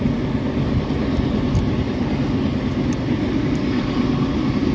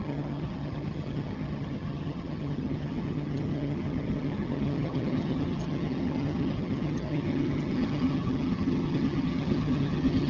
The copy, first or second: second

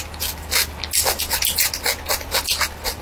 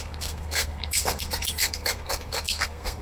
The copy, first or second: second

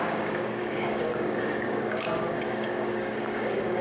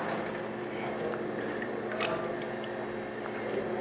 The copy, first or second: first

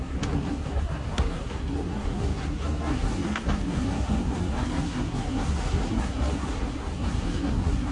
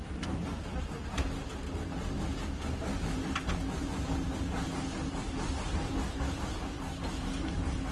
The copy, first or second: first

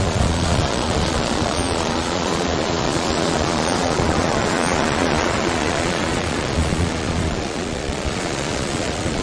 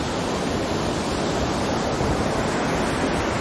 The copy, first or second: first